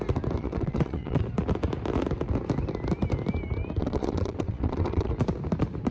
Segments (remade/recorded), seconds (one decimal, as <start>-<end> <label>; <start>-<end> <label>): 0.0-0.4 recorded; 0.4-1.2 remade; 1.2-3.8 recorded; 3.8-5.1 remade; 5.1-5.9 recorded